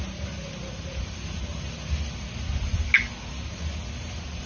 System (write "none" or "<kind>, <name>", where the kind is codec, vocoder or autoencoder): none